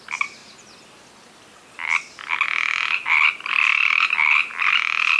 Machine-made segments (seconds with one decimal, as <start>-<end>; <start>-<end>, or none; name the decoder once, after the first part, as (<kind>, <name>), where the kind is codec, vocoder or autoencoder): none